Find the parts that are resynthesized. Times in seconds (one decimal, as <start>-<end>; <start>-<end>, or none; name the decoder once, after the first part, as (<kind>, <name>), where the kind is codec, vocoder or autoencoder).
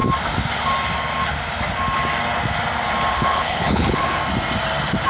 3.1-4.2 (codec, HILCodec)